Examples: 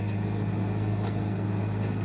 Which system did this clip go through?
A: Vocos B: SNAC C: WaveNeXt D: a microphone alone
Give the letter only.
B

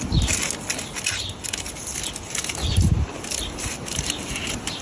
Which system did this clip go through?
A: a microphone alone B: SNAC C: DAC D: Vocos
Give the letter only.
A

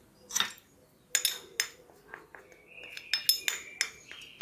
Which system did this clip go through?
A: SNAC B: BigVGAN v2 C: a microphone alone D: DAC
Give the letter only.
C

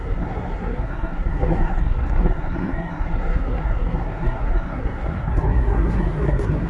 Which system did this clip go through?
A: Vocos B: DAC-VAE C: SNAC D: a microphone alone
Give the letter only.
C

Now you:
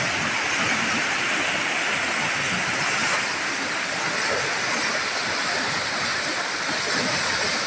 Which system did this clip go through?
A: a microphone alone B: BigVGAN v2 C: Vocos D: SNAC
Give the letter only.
A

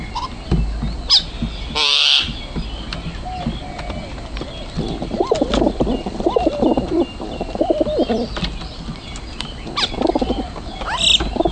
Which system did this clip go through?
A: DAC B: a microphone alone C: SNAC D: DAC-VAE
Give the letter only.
B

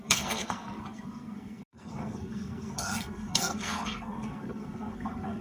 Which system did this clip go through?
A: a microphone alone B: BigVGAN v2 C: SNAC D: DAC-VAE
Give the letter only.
C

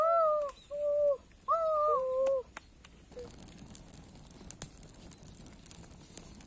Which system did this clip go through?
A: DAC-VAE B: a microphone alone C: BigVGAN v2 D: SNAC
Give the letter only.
B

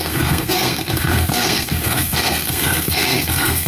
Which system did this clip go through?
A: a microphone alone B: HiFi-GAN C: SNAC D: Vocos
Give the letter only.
C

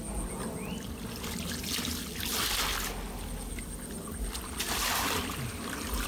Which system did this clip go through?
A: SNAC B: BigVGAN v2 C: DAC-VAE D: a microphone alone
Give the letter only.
D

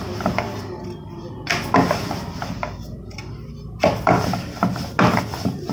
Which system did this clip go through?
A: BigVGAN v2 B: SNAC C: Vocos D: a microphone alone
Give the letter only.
D